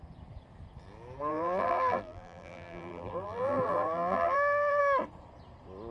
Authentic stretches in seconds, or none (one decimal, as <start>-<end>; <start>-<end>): 0.0-1.3; 4.8-5.9